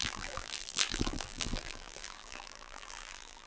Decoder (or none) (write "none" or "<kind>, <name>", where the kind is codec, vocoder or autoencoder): vocoder, BigVGAN v2